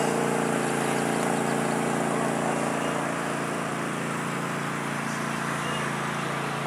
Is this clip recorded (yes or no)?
yes